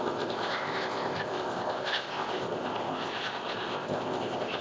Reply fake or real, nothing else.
fake